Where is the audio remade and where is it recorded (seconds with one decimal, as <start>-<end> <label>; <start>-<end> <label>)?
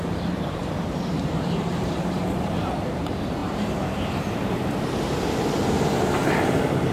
0.0-0.6 remade; 0.6-1.1 recorded; 1.1-6.9 remade